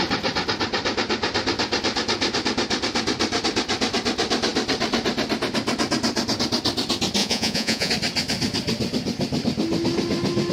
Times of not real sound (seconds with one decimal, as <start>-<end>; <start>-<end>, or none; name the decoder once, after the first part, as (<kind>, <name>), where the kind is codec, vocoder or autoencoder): 7.2-7.9 (vocoder, Vocos)

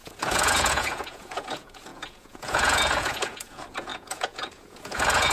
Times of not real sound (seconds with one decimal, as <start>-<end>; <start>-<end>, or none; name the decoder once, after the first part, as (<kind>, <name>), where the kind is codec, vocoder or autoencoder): 0.0-5.3 (vocoder, Vocos)